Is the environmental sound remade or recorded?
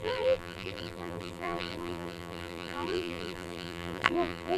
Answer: remade